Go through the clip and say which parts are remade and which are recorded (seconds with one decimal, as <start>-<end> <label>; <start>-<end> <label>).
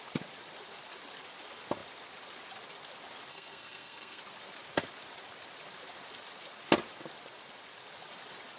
0.0-3.3 recorded; 3.3-4.2 remade; 4.2-8.6 recorded